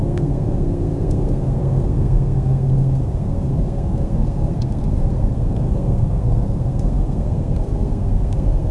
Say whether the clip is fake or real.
fake